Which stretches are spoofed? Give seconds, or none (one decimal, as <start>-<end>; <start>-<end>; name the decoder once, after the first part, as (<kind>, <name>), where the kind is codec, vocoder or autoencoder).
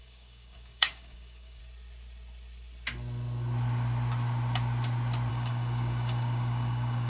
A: 0.0-1.6 (codec, DAC); 5.3-7.1